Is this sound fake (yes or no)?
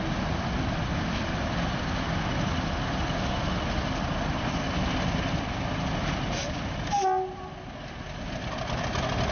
no